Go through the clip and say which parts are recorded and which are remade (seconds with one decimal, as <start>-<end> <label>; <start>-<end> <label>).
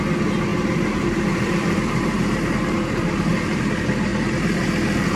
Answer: 0.0-0.5 recorded; 0.5-3.6 remade; 3.6-4.1 recorded; 4.1-4.7 remade; 4.7-5.2 recorded